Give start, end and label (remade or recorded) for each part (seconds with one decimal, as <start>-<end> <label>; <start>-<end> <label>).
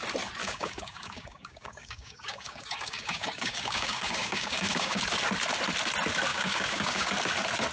0.0-0.4 recorded; 0.4-5.0 remade; 5.0-6.3 recorded; 6.3-7.1 remade; 7.1-7.7 recorded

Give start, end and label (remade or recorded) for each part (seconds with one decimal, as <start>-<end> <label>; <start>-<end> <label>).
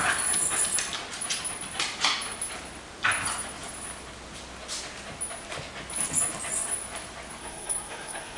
0.0-7.4 recorded; 7.4-8.4 remade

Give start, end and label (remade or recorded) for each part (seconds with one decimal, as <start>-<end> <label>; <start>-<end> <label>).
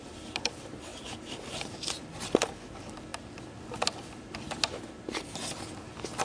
0.0-6.2 recorded